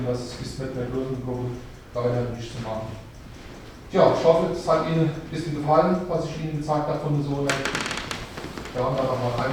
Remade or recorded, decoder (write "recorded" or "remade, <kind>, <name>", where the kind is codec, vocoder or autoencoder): recorded